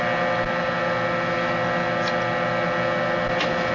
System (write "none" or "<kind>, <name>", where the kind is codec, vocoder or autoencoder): none